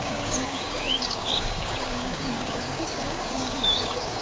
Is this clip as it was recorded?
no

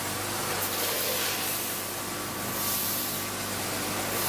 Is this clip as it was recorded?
yes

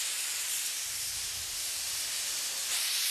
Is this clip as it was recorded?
no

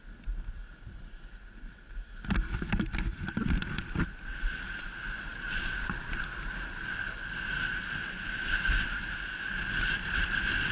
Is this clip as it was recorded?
no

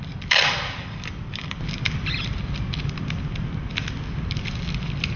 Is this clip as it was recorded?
yes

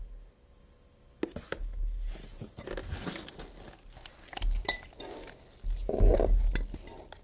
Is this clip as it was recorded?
yes